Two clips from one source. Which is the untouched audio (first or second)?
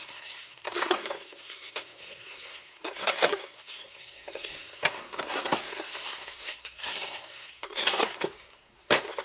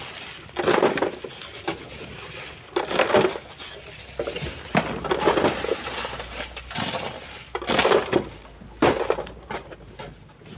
second